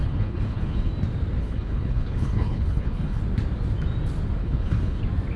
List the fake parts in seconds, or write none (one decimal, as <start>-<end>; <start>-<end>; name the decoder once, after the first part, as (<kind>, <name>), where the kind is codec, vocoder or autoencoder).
0.0-0.9 (codec, HILCodec); 1.4-3.2; 4.4-5.0